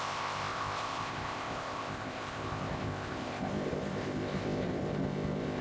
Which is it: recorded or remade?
remade